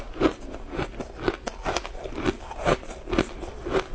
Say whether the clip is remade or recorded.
recorded